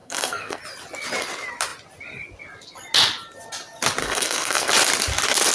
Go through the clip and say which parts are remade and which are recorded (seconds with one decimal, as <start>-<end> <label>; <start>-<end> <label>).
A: 0.0-0.6 remade; 0.6-4.0 recorded; 4.0-4.7 remade; 4.7-5.5 recorded